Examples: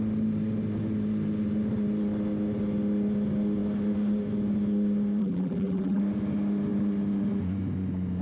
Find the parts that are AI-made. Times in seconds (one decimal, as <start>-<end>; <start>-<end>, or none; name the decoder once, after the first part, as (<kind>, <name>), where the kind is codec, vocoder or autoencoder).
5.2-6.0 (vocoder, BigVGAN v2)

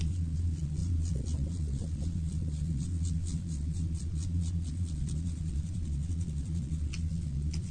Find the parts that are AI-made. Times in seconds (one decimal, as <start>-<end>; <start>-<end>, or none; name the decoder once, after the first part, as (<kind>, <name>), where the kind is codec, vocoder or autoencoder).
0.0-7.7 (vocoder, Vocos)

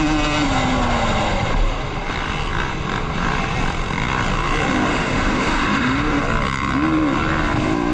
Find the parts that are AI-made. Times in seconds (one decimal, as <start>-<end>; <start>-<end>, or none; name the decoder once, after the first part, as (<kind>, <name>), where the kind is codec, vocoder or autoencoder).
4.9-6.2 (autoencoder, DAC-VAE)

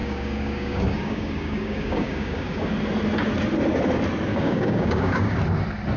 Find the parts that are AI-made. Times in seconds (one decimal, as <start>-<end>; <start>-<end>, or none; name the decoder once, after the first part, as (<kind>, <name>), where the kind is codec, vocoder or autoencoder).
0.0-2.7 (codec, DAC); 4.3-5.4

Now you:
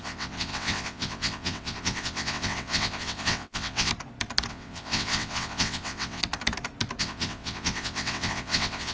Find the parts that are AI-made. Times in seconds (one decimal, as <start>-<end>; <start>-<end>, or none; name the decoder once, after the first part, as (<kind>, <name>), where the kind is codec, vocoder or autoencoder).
0.0-3.9 (vocoder, WaveNeXt); 4.5-6.2; 7.0-8.9